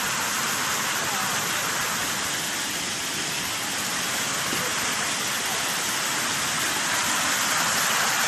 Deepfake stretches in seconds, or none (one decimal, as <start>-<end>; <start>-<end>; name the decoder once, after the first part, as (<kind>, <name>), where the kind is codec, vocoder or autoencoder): none